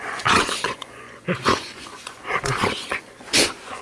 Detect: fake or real fake